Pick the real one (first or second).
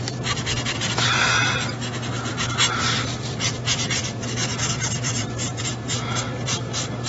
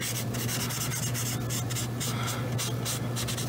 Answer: second